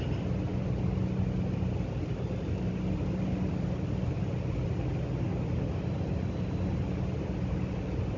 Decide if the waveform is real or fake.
real